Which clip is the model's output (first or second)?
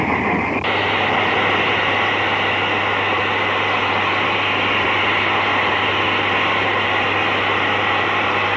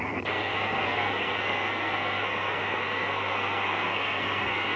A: second